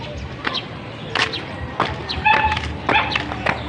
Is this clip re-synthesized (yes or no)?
no